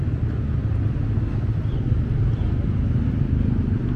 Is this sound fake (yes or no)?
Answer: no